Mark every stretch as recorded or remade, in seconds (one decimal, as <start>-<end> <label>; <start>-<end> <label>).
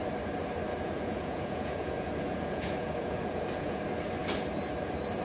0.0-0.7 recorded; 0.7-3.8 remade; 3.8-5.2 recorded